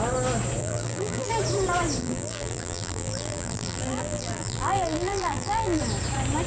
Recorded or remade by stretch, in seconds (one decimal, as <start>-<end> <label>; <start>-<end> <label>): 0.0-0.6 recorded; 0.6-1.3 remade; 1.3-2.0 recorded; 2.0-5.8 remade; 5.8-6.5 recorded